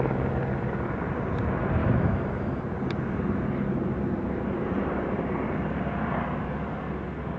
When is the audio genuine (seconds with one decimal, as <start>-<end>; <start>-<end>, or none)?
0.0-1.8; 2.6-7.4